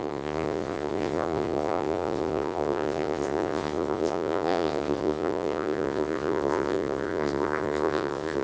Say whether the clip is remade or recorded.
remade